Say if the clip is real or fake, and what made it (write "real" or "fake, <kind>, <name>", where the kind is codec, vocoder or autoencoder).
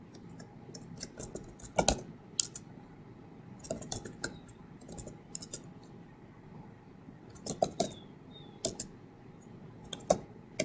real